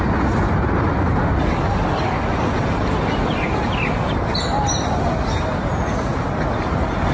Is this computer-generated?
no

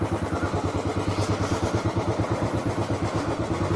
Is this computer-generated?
no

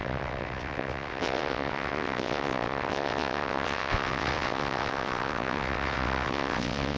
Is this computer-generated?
yes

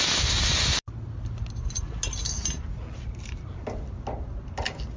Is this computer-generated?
no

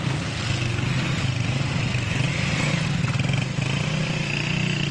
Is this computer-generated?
no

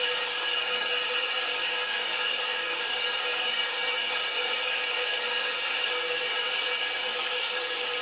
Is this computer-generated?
yes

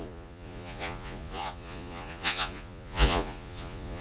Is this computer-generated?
yes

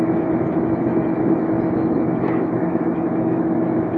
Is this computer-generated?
yes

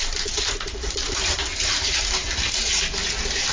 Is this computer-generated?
yes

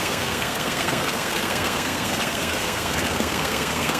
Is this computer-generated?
yes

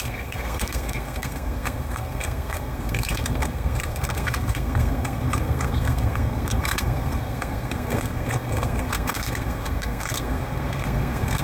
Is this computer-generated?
yes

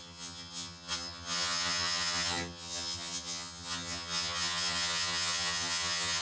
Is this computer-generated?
yes